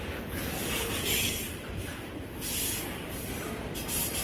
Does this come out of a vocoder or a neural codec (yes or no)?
no